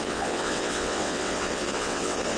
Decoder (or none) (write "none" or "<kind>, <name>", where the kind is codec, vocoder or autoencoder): vocoder, WaveNeXt